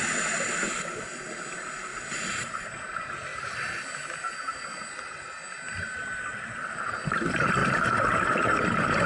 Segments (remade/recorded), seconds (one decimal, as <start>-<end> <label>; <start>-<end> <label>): 0.0-6.3 recorded; 6.3-6.9 remade; 6.9-7.6 recorded; 7.6-8.3 remade; 8.3-9.1 recorded

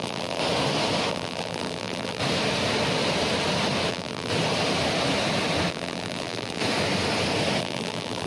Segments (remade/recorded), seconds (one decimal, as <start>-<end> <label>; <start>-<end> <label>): 0.0-0.4 remade; 0.4-1.1 recorded; 1.1-2.2 remade; 2.2-3.9 recorded; 3.9-4.3 remade; 4.3-5.7 recorded; 5.7-6.6 remade; 6.6-7.6 recorded; 7.6-8.3 remade